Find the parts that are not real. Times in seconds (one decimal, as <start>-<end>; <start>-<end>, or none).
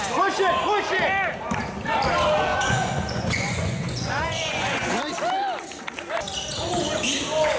2.5-5.0